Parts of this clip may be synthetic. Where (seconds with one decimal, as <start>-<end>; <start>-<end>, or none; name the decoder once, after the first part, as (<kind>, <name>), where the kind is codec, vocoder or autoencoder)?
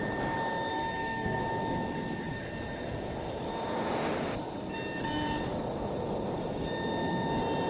0.7-1.4 (codec, SNAC)